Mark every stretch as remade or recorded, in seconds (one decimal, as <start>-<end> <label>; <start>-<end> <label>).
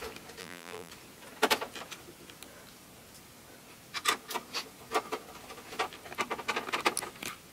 0.0-0.4 recorded; 0.4-0.9 remade; 0.9-7.5 recorded